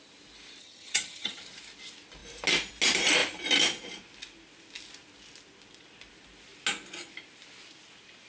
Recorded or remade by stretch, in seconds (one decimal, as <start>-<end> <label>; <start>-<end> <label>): 0.0-0.6 recorded; 0.6-1.4 remade; 1.4-8.3 recorded